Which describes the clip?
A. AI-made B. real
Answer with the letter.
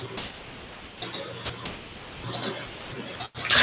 B